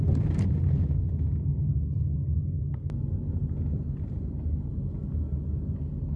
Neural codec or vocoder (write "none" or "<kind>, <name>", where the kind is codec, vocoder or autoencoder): none